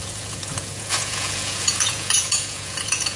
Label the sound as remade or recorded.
remade